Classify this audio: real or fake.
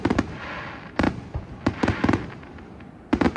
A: real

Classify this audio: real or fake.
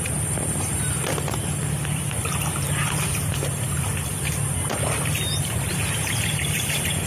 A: fake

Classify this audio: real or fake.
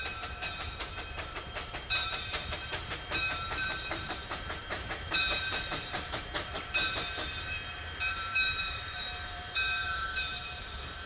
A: fake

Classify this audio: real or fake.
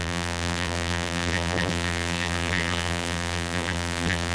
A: fake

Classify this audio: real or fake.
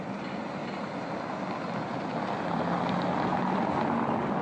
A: real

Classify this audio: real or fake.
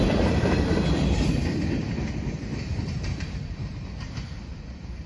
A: fake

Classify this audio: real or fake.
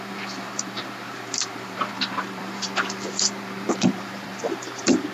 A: fake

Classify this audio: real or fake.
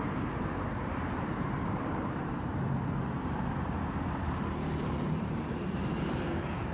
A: fake